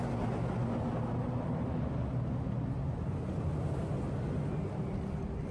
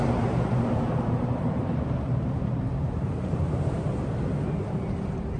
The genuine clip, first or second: first